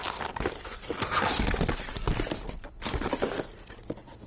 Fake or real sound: real